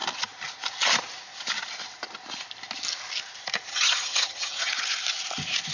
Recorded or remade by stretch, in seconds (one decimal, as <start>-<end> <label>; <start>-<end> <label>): 0.0-3.7 recorded; 3.7-4.7 remade; 4.7-5.7 recorded